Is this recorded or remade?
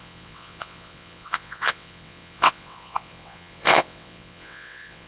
remade